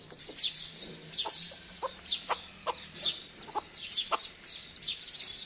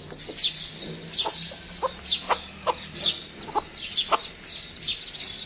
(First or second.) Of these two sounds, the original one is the second